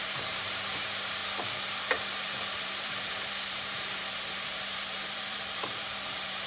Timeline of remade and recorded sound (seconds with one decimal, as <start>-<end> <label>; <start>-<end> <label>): 0.0-1.2 remade; 1.2-2.6 recorded; 2.6-6.5 remade